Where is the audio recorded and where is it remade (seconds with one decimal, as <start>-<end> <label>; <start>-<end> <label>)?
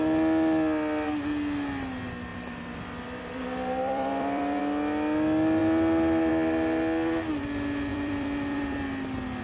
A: 0.0-2.3 recorded; 2.3-4.6 remade; 4.6-7.9 recorded; 7.9-8.8 remade; 8.8-9.4 recorded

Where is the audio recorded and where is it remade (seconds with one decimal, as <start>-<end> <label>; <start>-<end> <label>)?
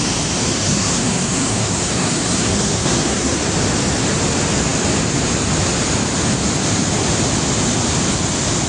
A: 0.0-0.4 recorded; 0.4-3.5 remade; 3.5-8.7 recorded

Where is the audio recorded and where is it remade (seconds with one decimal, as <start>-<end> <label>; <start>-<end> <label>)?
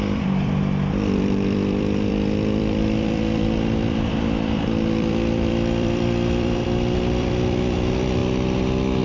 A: 0.0-8.2 remade; 8.2-9.0 recorded